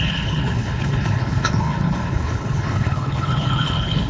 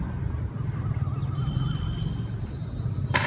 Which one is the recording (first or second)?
second